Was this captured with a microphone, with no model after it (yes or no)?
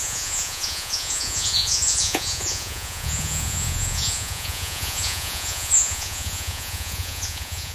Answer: no